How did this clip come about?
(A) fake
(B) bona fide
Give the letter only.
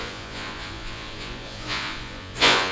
A